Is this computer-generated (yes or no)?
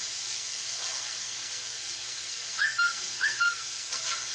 yes